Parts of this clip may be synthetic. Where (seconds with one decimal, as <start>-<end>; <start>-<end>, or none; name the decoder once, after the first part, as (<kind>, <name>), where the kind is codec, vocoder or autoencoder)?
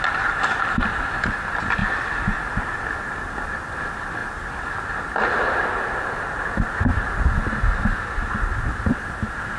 none